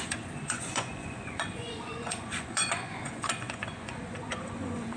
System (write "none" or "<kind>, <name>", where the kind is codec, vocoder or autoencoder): vocoder, Vocos